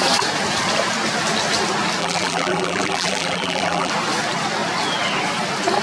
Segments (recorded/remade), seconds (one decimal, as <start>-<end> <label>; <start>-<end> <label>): 0.0-2.0 recorded; 2.0-3.9 remade; 3.9-5.8 recorded